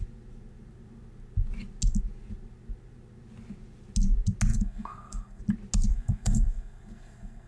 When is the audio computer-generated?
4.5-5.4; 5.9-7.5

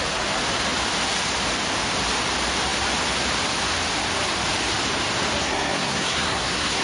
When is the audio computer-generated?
5.4-6.8

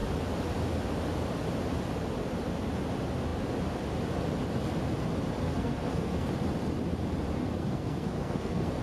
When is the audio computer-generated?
5.4-6.3; 7.4-8.8

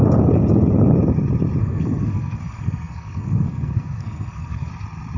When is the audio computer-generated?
1.6-4.7

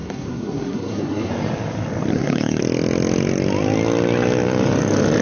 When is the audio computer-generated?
0.0-1.3; 2.1-2.6

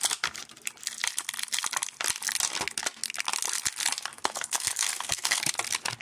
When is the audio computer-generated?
4.1-5.4

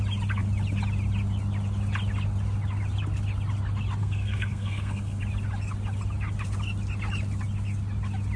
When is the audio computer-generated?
4.0-5.2